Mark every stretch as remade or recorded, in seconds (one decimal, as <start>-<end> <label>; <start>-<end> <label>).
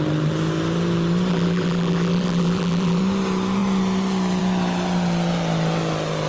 0.0-1.3 recorded; 1.3-3.0 remade; 3.0-6.3 recorded